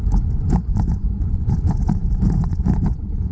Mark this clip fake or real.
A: fake